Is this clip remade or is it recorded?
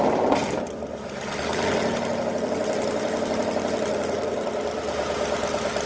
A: recorded